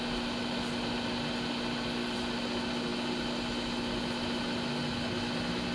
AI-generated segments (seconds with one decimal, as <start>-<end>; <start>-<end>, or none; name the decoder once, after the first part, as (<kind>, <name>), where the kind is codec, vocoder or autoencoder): none